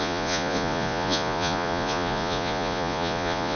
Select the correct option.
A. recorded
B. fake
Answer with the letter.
B